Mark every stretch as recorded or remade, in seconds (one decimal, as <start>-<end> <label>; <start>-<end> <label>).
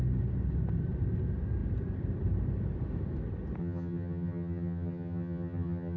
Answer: 0.0-3.6 recorded; 3.6-6.0 remade